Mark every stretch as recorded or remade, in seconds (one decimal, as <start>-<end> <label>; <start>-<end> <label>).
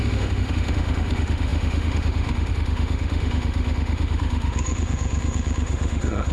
0.0-6.3 remade